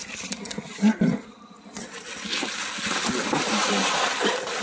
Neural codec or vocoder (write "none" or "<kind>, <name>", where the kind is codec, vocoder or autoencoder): none